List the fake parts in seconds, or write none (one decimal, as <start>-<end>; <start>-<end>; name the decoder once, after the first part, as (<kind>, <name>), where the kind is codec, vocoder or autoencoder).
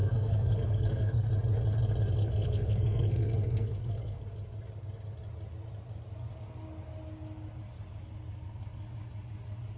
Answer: 0.0-1.3 (codec, SNAC); 2.2-4.2